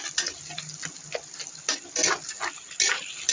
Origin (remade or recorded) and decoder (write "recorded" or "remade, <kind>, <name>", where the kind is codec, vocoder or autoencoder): recorded